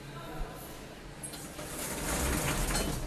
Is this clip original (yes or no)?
yes